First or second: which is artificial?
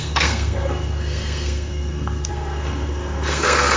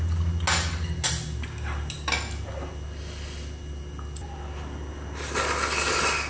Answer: first